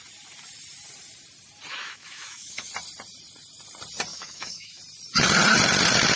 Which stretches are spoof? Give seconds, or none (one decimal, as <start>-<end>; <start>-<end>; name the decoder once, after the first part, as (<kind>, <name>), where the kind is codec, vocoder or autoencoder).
1.7-2.7 (autoencoder, DAC-VAE); 4.1-4.8